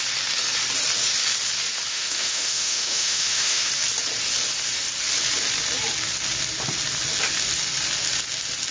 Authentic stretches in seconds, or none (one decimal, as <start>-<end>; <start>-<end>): 0.0-1.9; 3.7-8.7